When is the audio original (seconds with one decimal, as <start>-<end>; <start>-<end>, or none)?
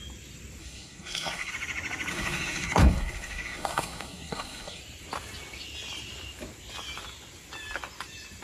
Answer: 0.0-0.6; 1.5-2.1; 4.8-8.4